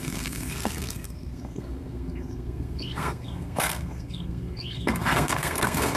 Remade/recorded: remade